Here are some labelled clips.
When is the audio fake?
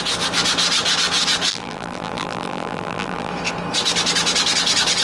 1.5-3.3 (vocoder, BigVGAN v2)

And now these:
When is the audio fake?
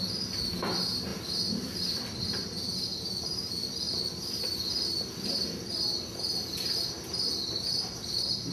1.1-1.8 (vocoder, BigVGAN v2); 2.9-3.7